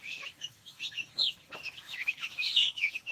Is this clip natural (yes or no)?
no